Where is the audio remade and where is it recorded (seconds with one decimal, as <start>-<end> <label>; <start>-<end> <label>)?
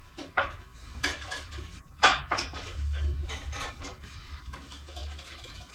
0.0-5.7 remade